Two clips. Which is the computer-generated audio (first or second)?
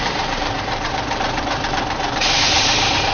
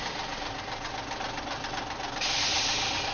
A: first